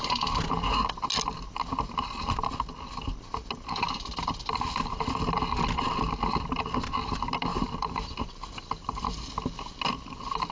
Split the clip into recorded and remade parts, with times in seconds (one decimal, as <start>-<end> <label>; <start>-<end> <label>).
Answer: 0.0-0.5 remade; 0.5-7.5 recorded; 7.5-9.3 remade; 9.3-10.5 recorded

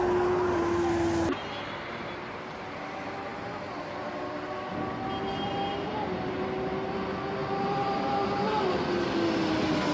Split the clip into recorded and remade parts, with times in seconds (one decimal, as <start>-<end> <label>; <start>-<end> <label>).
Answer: 0.0-9.9 recorded

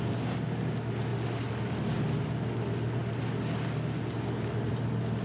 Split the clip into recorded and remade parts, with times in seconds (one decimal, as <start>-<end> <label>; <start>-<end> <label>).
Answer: 0.0-5.2 recorded